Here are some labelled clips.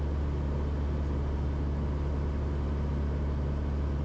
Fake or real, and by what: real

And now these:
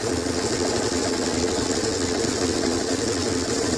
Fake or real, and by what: fake, vocoder, Vocos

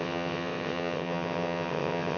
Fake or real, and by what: fake, vocoder, WaveNeXt